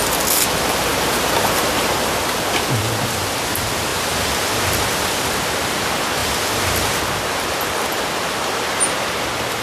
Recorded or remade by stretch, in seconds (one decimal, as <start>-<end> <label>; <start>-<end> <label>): 0.0-9.6 remade